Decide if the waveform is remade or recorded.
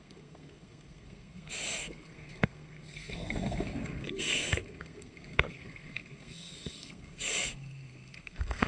remade